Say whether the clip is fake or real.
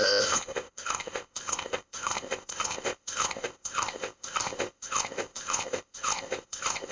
fake